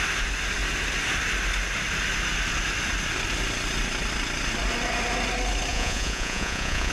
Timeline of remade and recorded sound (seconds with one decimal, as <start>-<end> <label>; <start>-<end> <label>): 0.0-5.7 recorded; 5.7-6.9 remade